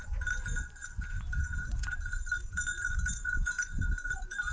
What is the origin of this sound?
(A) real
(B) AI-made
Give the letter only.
B